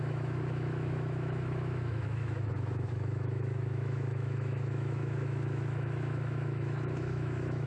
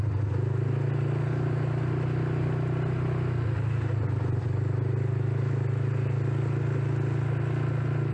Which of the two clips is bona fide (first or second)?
second